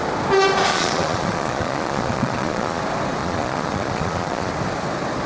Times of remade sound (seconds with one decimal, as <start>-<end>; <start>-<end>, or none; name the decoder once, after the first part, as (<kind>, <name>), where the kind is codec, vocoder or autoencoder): 0.7-2.8 (vocoder, Vocos); 3.2-4.5